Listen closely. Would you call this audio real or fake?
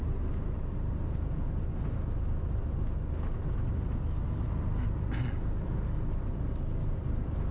real